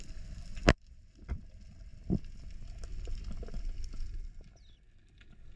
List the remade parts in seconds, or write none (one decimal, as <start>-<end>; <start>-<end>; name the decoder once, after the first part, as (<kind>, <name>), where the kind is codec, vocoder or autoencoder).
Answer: none